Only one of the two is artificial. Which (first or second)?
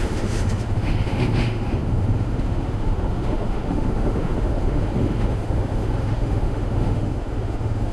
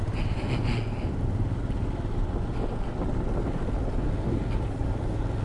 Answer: first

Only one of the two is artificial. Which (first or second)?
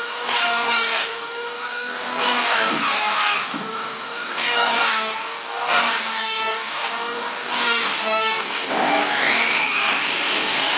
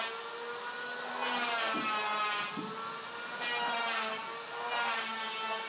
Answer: first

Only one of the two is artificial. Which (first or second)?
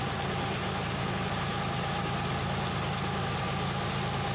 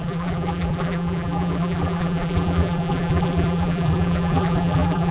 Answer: second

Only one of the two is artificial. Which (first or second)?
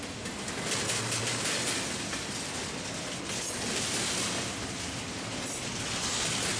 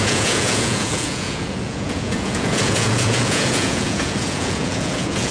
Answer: second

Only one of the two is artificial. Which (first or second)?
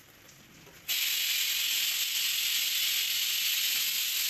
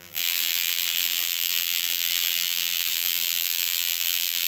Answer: second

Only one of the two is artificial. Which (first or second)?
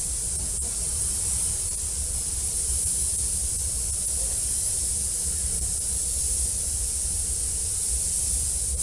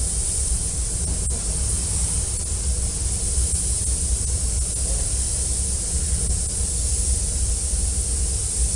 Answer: first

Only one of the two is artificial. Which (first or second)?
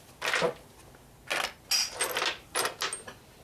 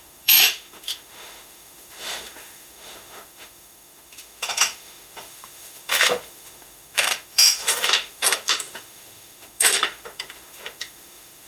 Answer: second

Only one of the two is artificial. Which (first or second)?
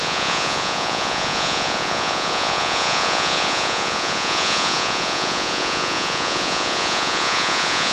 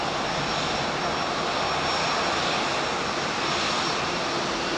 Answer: first